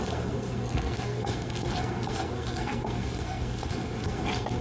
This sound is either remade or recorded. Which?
remade